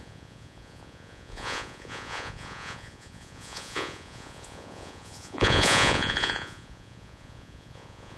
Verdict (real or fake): fake